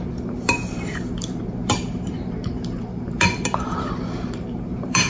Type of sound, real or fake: fake